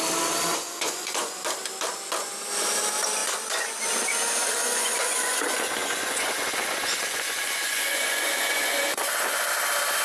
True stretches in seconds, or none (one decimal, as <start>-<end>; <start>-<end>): 0.0-0.5; 1.4-3.2; 3.8-4.6; 9.5-10.0